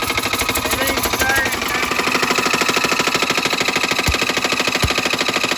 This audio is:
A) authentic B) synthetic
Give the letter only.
A